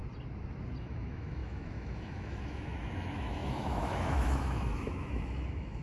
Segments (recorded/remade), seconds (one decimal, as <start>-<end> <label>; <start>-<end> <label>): 0.0-0.8 recorded; 0.8-5.8 remade